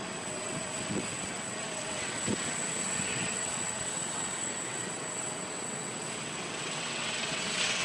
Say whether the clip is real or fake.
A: fake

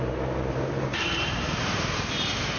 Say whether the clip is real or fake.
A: fake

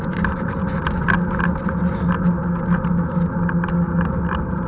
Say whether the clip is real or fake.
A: real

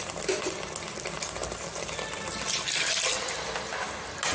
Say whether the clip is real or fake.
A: real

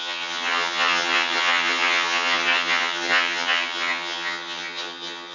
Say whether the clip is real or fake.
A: fake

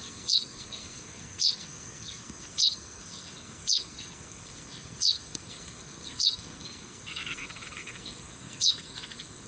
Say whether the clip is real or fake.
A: fake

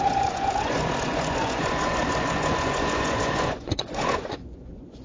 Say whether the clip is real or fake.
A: fake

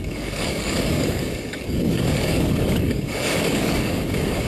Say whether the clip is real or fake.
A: fake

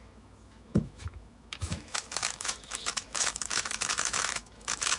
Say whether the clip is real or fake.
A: fake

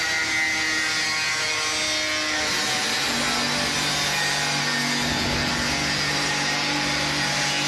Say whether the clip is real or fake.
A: real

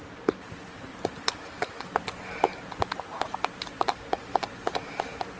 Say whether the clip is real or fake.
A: real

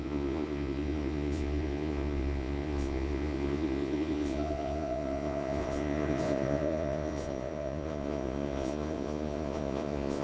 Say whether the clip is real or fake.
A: fake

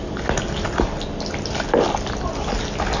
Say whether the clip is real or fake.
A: real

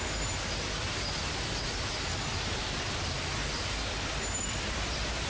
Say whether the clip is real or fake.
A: real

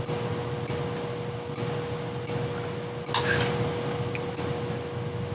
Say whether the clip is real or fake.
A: real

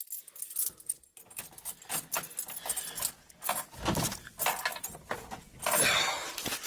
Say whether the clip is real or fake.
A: real